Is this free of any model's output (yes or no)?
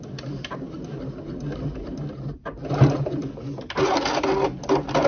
yes